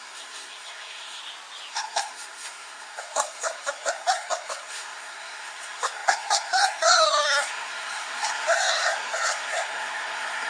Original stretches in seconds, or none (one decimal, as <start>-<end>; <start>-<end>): 1.2-1.7